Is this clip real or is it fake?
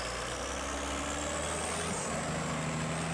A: real